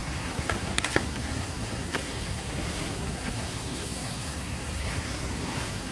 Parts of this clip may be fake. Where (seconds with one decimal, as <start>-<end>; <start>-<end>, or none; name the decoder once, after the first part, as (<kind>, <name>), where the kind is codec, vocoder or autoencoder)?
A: 0.0-5.9 (codec, SNAC)